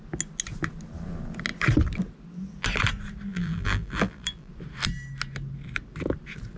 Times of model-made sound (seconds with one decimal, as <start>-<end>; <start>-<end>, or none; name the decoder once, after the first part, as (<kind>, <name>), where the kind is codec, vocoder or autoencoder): 3.3-4.5 (vocoder, BigVGAN v2)